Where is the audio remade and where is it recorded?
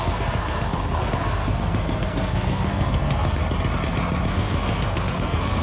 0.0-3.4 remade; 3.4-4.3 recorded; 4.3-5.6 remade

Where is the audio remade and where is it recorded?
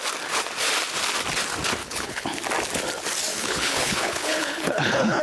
0.0-1.8 recorded; 1.8-2.4 remade; 2.4-3.3 recorded; 3.3-5.2 remade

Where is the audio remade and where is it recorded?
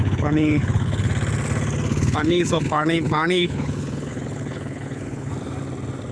0.0-1.1 remade; 1.1-1.9 recorded; 1.9-5.3 remade; 5.3-6.1 recorded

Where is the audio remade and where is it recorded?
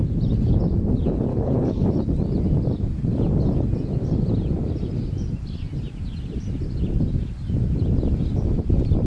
0.0-1.3 recorded; 1.3-1.9 remade; 1.9-9.1 recorded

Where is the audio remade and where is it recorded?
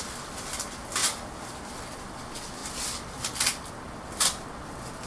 0.0-5.1 recorded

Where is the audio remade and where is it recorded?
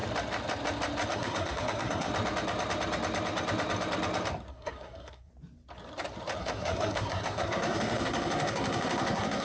0.0-1.1 recorded; 1.1-2.1 remade; 2.1-4.5 recorded; 4.5-5.3 remade; 5.3-6.4 recorded; 6.4-9.4 remade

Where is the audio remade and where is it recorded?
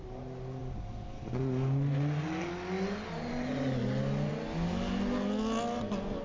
0.0-6.2 recorded